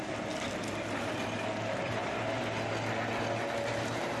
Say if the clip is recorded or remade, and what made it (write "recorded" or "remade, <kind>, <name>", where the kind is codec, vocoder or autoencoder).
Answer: recorded